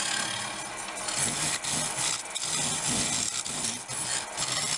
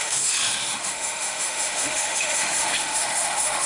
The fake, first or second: second